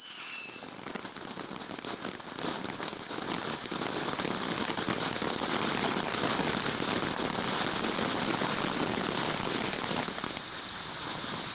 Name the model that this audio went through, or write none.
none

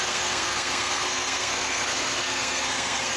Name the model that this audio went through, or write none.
codec, SNAC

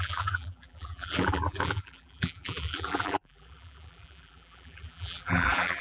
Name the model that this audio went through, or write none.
vocoder, BigVGAN v2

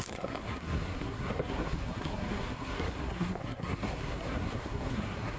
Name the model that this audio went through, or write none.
codec, SNAC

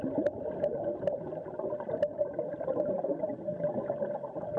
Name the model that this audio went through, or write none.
vocoder, BigVGAN v2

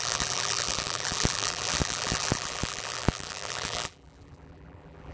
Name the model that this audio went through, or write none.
vocoder, BigVGAN v2